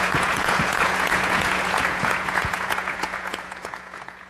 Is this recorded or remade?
remade